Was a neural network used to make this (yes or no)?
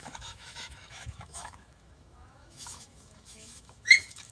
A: yes